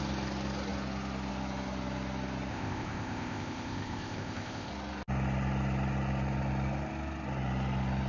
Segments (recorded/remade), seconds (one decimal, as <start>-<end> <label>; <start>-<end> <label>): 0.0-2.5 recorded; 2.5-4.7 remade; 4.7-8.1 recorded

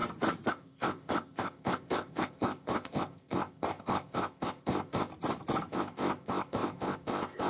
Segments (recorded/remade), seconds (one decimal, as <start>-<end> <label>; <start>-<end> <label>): 0.0-0.5 recorded; 0.5-5.1 remade; 5.1-5.7 recorded; 5.7-7.5 remade

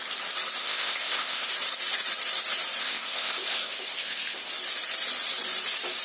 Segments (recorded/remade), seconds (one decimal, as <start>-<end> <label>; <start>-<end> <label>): 0.0-0.6 recorded; 0.6-1.5 remade; 1.5-2.8 recorded; 2.8-4.5 remade; 4.5-6.0 recorded